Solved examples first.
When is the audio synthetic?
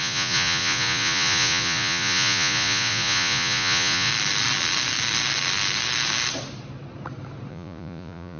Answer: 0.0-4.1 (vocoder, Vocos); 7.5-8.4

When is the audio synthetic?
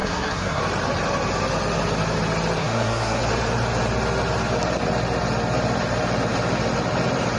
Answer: 0.0-0.6 (codec, SNAC); 2.6-3.2